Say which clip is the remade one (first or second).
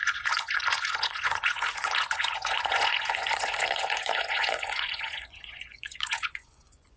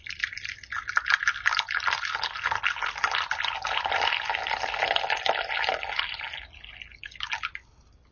first